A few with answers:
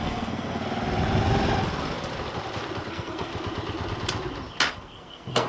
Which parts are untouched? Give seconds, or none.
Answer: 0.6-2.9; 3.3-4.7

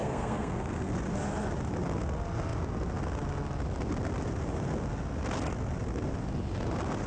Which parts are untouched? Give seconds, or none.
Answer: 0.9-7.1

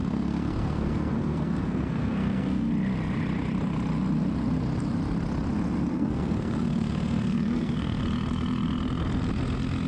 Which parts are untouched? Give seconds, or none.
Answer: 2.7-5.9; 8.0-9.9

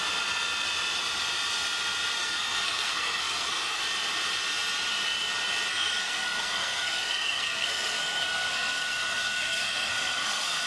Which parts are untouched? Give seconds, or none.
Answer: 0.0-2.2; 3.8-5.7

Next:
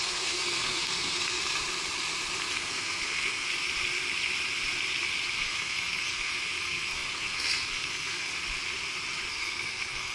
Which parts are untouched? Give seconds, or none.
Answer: 1.4-2.5; 3.5-5.3; 8.3-9.3

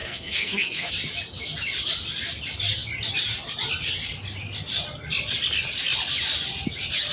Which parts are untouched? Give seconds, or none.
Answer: 0.9-7.1